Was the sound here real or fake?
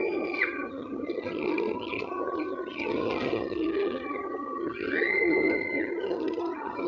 fake